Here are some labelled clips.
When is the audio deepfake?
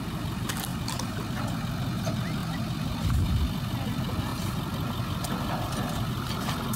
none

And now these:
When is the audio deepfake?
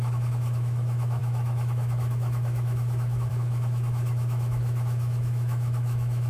0.0-6.3 (autoencoder, DAC-VAE)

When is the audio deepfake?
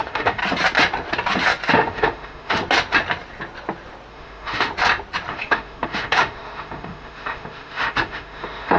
0.0-0.4 (autoencoder, DAC-VAE); 1.7-2.6; 4.1-4.7; 5.3-8.8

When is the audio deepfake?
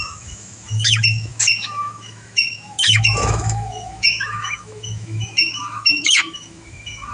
0.0-7.1 (autoencoder, DAC-VAE)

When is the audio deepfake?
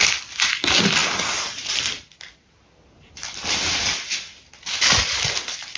none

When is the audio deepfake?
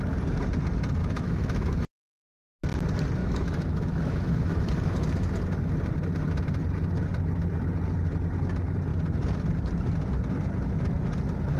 1.0-2.6 (autoencoder, DAC-VAE); 3.2-4.7